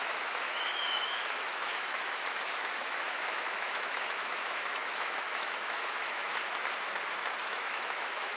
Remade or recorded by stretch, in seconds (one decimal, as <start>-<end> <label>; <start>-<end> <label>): 0.0-6.3 remade; 6.3-7.4 recorded; 7.4-8.4 remade

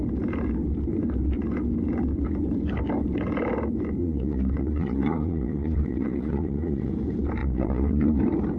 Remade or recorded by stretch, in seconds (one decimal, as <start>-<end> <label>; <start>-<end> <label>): 0.0-4.0 recorded; 4.0-6.9 remade; 6.9-7.4 recorded; 7.4-8.2 remade; 8.2-8.6 recorded